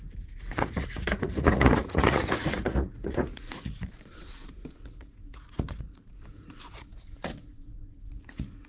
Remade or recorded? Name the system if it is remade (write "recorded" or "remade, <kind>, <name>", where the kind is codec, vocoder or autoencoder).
remade, vocoder, Vocos